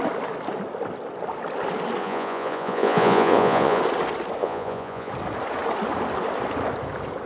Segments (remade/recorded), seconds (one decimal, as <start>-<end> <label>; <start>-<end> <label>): 0.0-2.0 recorded; 2.0-3.8 remade; 3.8-4.4 recorded; 4.4-5.1 remade; 5.1-7.3 recorded